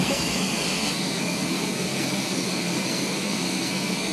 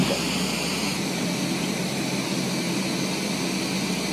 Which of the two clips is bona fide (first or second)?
second